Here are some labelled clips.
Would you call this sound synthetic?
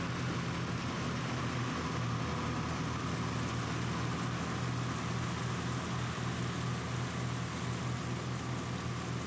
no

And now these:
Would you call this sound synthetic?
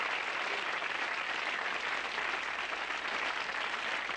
no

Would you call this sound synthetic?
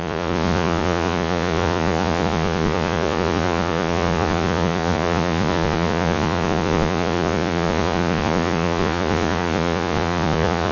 yes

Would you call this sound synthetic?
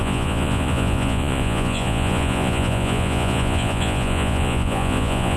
yes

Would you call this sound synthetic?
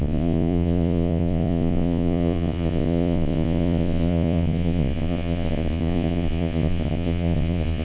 yes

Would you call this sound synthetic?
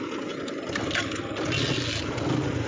no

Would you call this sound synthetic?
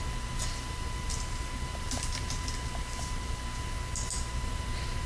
no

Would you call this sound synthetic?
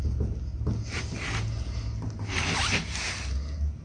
no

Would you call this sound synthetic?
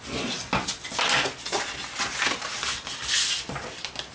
no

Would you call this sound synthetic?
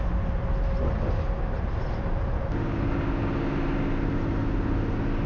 no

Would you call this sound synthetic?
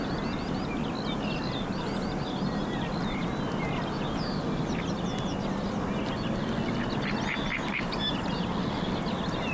no